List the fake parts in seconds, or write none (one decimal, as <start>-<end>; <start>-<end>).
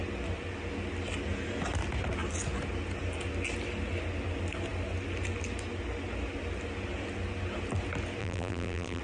8.2-9.0